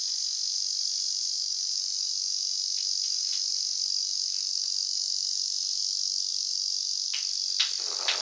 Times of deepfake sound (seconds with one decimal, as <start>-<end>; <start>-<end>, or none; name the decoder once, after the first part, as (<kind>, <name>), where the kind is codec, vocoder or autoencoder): 0.0-5.8 (vocoder, BigVGAN v2); 6.3-8.2